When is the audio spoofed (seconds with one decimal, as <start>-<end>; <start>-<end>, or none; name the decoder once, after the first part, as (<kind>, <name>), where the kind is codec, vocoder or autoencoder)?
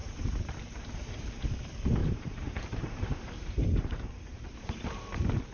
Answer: 0.0-1.3 (vocoder, BigVGAN v2); 2.0-4.7